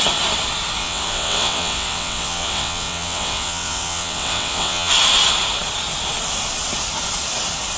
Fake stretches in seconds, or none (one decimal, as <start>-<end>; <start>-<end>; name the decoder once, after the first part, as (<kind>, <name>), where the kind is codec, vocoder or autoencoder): 0.8-4.9 (vocoder, WaveNeXt)